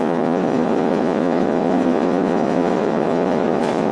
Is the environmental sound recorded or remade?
remade